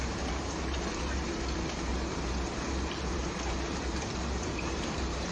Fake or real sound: fake